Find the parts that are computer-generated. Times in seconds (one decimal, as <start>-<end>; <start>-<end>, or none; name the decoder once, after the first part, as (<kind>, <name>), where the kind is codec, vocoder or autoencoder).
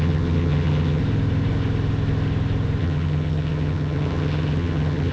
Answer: 0.0-1.0 (vocoder, HiFi-GAN); 2.8-5.1